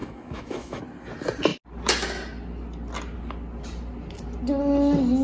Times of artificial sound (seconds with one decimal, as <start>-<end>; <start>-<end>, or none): 0.0-0.8